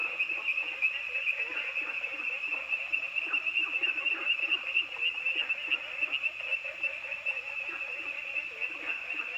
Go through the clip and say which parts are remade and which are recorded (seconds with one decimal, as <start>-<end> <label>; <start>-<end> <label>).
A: 0.0-9.4 recorded